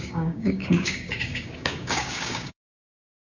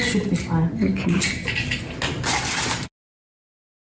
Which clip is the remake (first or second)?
first